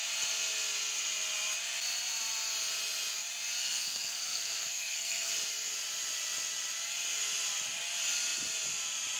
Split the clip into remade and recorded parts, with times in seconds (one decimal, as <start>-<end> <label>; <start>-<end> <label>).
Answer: 0.0-3.6 recorded; 3.6-5.3 remade; 5.3-9.2 recorded